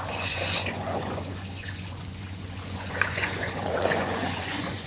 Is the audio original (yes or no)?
no